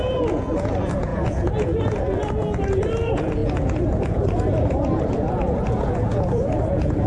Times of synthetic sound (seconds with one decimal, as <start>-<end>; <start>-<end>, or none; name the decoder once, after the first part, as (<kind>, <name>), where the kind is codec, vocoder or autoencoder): 0.0-7.1 (vocoder, Vocos)